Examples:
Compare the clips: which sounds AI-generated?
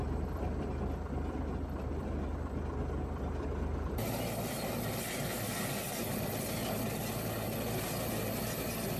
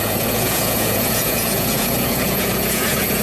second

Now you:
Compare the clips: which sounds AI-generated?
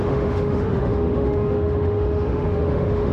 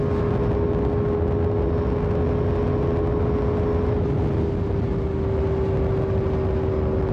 first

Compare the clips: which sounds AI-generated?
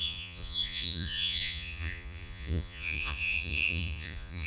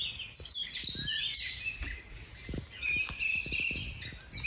first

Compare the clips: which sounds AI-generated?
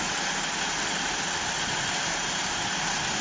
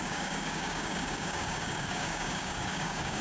second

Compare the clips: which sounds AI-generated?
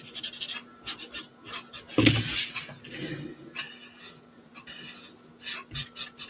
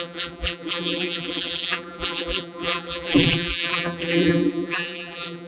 second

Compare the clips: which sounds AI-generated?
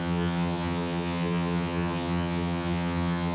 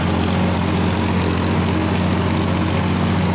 first